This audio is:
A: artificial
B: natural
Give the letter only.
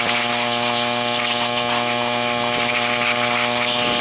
B